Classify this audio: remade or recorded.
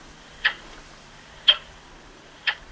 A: remade